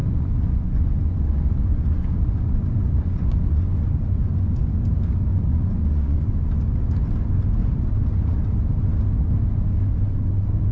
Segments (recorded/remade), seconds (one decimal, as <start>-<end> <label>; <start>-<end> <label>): 0.0-4.7 remade; 4.7-5.3 recorded; 5.3-6.5 remade; 6.5-10.7 recorded